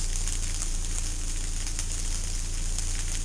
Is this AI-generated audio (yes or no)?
no